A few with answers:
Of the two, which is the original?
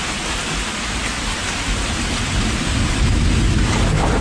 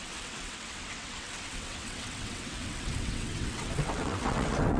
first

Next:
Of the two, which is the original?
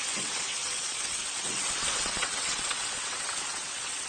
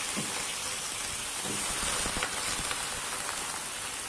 second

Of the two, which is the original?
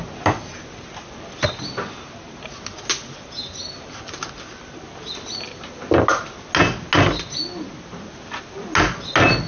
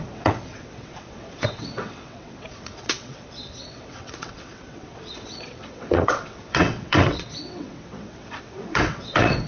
first